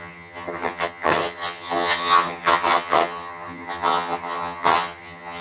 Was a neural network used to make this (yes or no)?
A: yes